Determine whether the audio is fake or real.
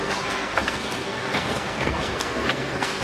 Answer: fake